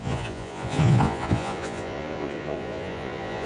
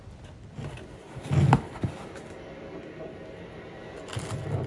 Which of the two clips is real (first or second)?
second